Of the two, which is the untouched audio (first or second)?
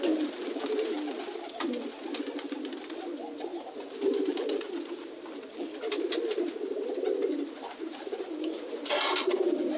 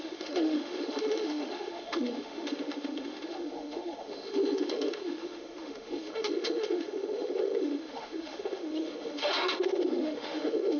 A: first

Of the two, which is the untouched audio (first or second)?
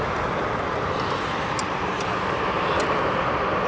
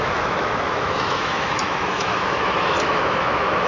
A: first